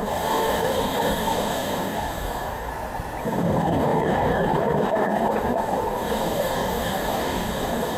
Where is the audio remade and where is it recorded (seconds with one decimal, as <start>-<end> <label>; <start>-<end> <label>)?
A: 0.0-2.7 remade; 2.7-3.2 recorded; 3.2-8.0 remade